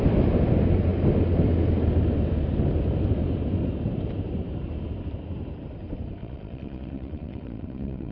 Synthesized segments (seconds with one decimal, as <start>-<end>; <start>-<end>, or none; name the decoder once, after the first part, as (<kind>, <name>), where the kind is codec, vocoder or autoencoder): 6.2-8.1 (vocoder, Vocos)